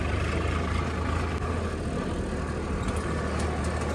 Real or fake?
real